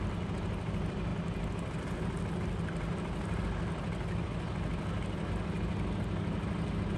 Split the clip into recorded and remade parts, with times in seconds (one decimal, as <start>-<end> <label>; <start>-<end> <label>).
0.0-7.0 recorded